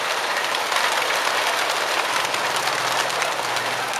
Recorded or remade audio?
recorded